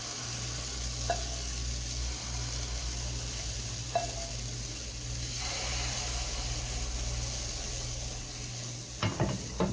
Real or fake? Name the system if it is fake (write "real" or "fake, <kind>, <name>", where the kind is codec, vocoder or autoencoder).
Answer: real